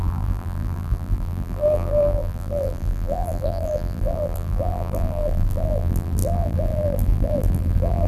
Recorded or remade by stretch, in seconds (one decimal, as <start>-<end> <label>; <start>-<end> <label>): 0.0-8.1 remade